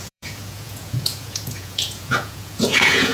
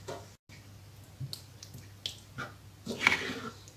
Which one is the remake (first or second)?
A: first